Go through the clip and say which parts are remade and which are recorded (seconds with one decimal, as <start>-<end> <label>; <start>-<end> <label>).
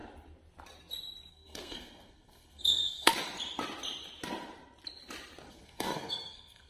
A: 0.0-1.3 recorded; 1.3-3.1 remade; 3.1-5.5 recorded; 5.5-6.7 remade